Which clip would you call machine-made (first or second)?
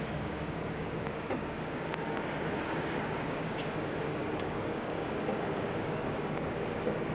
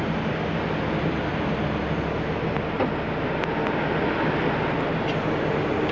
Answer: first